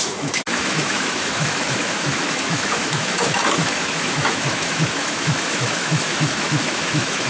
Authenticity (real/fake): fake